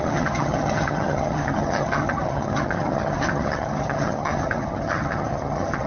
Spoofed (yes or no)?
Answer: yes